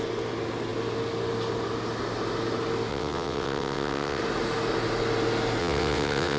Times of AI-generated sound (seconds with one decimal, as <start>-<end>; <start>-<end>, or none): 2.9-4.2; 5.6-6.4